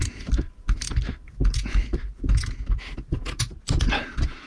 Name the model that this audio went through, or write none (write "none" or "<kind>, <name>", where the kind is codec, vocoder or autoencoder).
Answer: none